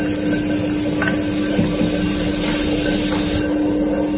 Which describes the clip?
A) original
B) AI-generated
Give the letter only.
A